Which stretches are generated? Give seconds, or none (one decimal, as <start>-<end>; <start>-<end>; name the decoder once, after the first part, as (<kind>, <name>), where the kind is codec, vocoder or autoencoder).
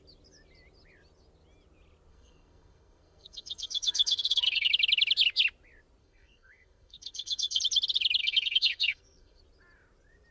2.1-4.7 (codec, SNAC); 6.0-7.6; 8.2-9.4